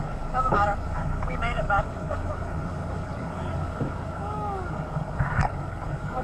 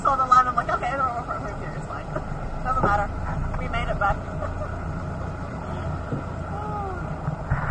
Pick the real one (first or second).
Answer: second